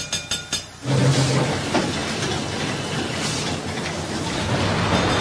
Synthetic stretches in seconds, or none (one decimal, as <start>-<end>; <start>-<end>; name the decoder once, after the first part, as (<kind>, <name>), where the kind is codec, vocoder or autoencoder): none